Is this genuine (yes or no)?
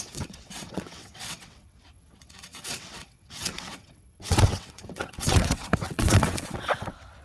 no